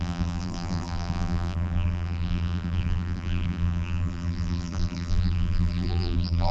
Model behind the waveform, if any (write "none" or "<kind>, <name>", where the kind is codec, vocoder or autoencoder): vocoder, BigVGAN v2